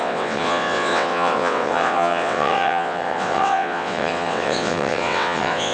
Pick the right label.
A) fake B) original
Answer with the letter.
A